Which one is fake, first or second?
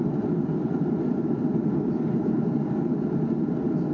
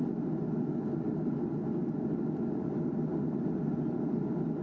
first